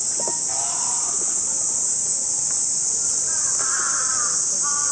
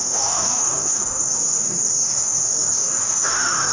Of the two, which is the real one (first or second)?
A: first